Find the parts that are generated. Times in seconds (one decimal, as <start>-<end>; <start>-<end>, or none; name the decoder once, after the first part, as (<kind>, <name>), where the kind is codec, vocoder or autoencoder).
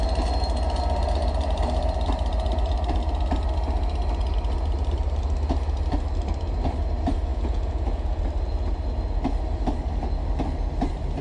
7.3-8.2 (vocoder, Vocos)